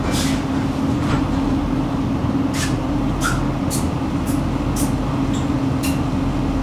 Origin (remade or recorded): recorded